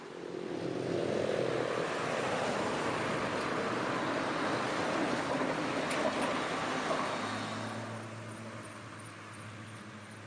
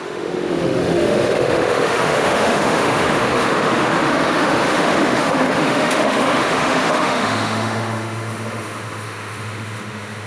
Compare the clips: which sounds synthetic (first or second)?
second